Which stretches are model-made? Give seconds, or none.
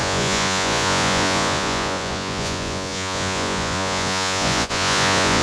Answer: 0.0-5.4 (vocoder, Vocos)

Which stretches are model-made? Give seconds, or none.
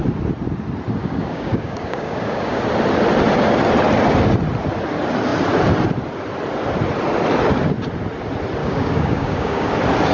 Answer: 1.0-2.6 (codec, DAC); 8.6-9.7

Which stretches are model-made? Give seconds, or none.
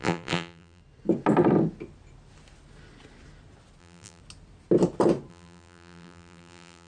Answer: 0.0-0.8 (vocoder, BigVGAN v2); 3.8-4.2; 5.3-6.9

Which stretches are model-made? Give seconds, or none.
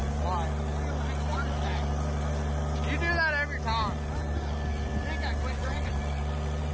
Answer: 5.6-6.7 (vocoder, BigVGAN v2)